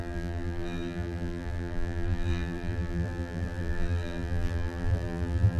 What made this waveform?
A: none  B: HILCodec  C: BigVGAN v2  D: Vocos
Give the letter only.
C